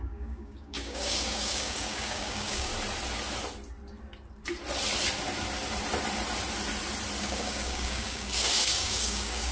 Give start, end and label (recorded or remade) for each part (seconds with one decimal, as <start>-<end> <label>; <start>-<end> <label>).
0.0-2.7 remade; 2.7-7.2 recorded; 7.2-9.5 remade